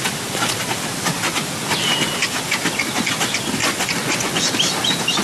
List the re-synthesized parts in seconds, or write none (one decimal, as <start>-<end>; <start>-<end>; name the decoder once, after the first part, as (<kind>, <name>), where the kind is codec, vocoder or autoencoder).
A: 3.6-4.4 (vocoder, Vocos)